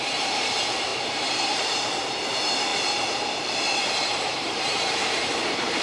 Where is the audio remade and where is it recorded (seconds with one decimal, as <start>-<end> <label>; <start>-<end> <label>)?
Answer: 0.0-5.8 remade